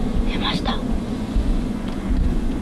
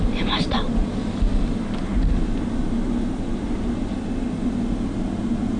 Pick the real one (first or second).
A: second